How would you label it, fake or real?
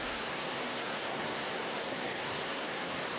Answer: fake